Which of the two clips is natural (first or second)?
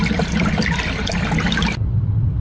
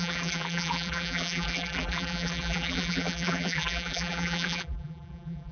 first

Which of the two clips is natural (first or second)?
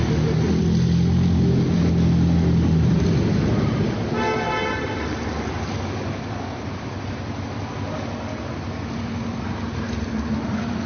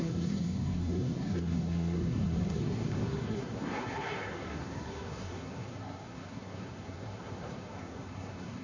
first